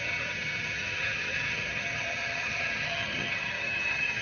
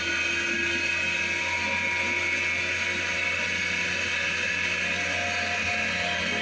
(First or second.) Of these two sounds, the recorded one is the second